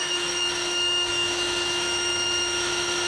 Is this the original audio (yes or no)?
no